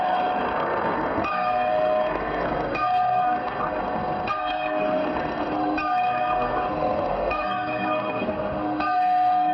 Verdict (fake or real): fake